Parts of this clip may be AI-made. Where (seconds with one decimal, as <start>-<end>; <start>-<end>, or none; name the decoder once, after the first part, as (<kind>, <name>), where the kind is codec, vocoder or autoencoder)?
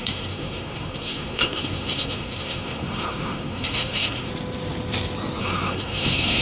0.0-4.3 (codec, SNAC); 5.4-6.4